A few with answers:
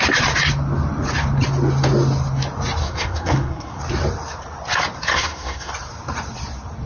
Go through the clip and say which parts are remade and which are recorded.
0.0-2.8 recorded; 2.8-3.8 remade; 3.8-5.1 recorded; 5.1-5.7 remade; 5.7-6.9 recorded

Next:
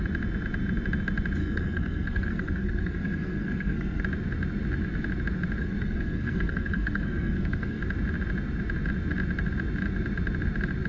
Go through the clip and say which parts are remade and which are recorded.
0.0-1.4 recorded; 1.4-4.0 remade; 4.0-5.6 recorded; 5.6-7.8 remade; 7.8-10.9 recorded

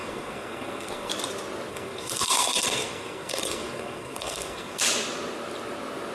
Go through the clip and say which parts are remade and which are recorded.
0.0-1.1 remade; 1.1-1.7 recorded; 1.7-4.8 remade; 4.8-6.1 recorded

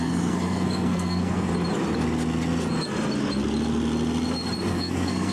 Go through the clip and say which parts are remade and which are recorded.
0.0-1.5 remade; 1.5-4.7 recorded; 4.7-5.3 remade

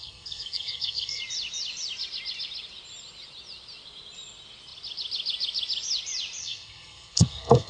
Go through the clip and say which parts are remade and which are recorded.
0.0-1.2 remade; 1.2-6.4 recorded; 6.4-7.7 remade

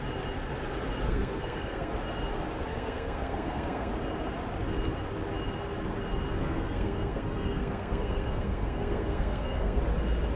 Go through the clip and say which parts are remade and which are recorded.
0.0-1.0 recorded; 1.0-1.9 remade; 1.9-2.7 recorded; 2.7-3.9 remade; 3.9-6.4 recorded; 6.4-9.8 remade; 9.8-10.4 recorded